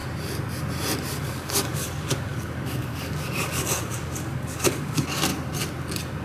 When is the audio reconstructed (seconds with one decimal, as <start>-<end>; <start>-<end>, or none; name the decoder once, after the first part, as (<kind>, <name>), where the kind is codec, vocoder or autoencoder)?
1.1-5.3 (codec, DAC)